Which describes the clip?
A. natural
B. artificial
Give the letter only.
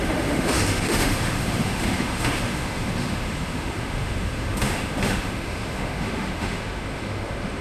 B